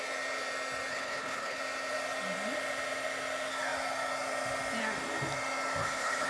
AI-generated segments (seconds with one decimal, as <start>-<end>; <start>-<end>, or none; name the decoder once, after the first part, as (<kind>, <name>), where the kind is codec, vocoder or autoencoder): 0.9-1.6 (codec, HILCodec); 5.8-6.3

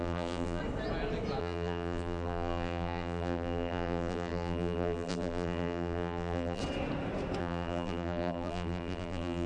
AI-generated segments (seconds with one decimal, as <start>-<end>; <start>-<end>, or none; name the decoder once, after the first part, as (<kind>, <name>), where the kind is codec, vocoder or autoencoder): 0.0-0.6 (vocoder, BigVGAN v2); 1.4-6.6; 7.4-9.5

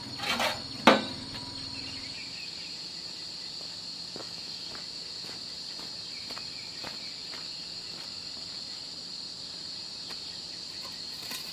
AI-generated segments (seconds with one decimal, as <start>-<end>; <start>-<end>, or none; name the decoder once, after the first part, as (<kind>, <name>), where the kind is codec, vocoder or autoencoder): 4.2-4.7 (autoencoder, DAC-VAE)